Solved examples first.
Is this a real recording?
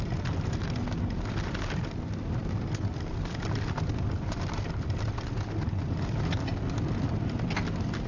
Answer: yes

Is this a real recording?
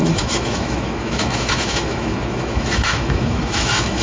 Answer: no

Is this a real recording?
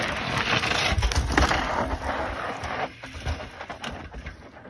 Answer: yes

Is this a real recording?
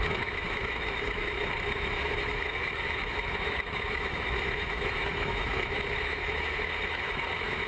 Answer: no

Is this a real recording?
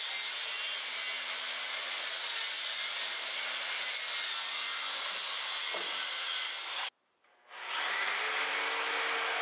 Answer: yes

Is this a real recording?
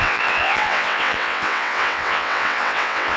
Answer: no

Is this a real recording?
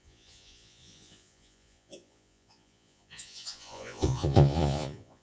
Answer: no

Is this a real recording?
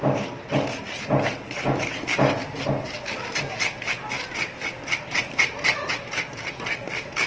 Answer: yes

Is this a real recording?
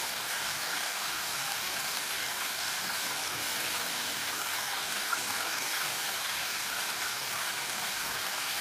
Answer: no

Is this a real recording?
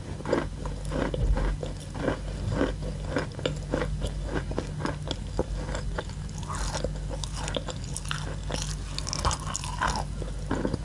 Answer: yes